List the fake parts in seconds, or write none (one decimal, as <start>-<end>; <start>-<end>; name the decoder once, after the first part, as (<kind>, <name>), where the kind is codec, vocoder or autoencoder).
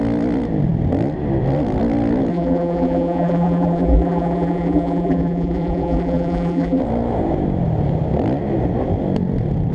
2.3-6.8 (vocoder, BigVGAN v2)